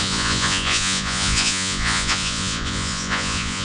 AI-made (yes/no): yes